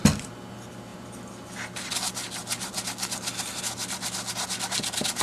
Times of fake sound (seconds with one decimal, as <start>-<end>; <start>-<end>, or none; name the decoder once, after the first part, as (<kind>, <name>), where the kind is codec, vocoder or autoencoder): none